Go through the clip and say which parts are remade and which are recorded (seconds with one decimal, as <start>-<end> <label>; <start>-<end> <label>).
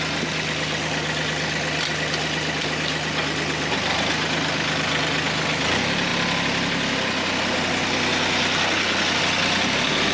0.0-10.1 recorded